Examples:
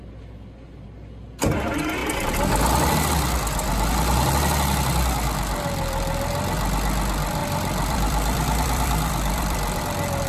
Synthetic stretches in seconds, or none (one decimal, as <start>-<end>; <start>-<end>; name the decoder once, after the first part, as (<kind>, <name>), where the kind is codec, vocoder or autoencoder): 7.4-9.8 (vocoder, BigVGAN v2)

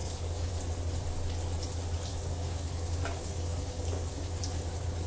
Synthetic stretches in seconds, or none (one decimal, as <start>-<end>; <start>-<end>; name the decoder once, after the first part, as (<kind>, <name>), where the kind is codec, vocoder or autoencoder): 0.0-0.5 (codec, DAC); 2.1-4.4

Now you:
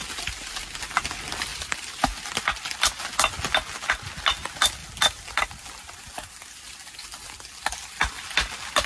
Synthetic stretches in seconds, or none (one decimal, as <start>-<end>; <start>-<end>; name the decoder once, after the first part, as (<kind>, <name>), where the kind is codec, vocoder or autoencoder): none

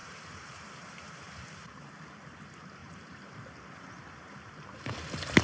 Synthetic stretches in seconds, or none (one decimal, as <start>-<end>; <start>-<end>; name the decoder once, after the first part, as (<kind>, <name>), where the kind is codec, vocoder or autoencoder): 0.0-1.6 (vocoder, BigVGAN v2); 2.8-3.4

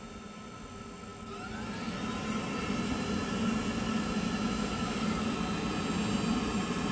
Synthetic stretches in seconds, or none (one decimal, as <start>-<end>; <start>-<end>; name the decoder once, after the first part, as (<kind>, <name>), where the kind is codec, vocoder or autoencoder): none

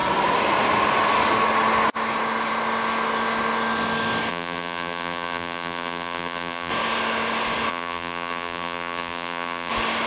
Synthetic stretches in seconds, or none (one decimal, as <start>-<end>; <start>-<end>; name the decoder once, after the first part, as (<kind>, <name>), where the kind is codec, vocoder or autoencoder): 4.3-6.7 (vocoder, BigVGAN v2); 7.7-9.7